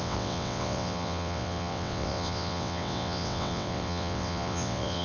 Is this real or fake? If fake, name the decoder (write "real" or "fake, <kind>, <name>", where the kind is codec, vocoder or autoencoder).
fake, vocoder, WaveNeXt